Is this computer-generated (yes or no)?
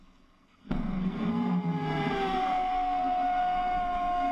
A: yes